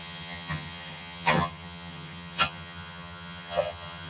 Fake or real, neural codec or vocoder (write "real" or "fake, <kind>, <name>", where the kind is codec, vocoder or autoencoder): fake, vocoder, HiFi-GAN